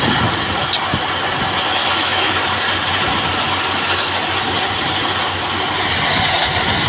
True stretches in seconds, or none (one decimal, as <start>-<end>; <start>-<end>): 0.0-1.8; 2.3-6.9

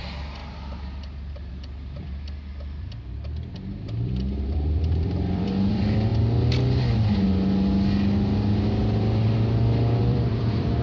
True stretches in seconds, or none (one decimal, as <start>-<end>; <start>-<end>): 6.1-10.0

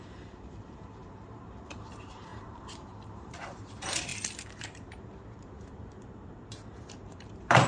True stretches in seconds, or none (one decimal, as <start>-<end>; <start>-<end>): 4.1-4.6

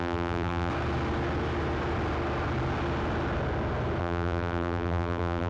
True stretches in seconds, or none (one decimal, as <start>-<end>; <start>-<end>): 0.7-4.0

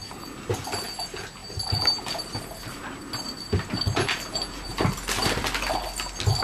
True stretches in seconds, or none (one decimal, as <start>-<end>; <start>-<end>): 0.0-6.4